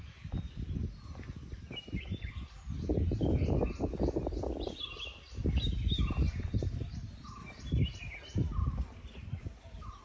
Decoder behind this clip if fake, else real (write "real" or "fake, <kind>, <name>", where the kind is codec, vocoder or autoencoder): real